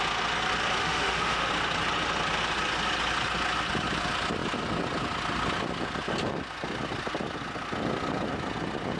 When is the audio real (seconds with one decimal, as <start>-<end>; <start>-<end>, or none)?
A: 0.0-0.8; 1.5-9.0